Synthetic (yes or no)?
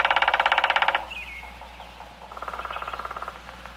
no